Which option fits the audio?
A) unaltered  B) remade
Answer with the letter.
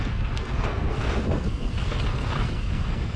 B